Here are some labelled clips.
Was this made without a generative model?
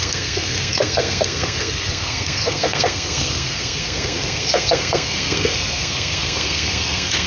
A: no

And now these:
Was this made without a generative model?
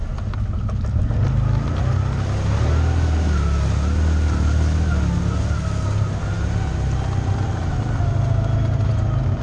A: yes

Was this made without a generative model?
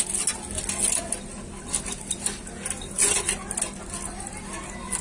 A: yes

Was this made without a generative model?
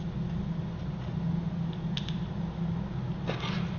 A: yes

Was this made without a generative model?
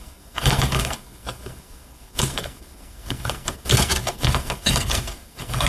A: no